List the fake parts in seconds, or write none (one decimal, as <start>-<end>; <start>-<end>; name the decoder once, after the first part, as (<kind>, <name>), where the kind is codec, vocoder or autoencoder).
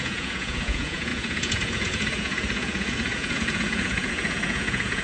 0.0-5.0 (vocoder, Vocos)